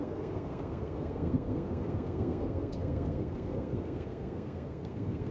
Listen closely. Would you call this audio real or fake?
fake